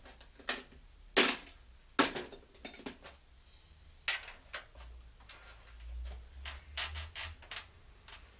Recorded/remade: recorded